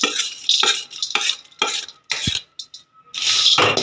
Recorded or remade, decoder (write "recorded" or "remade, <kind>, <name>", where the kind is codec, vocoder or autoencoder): recorded